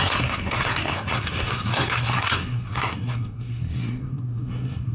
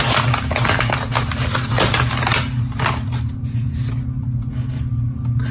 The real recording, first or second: second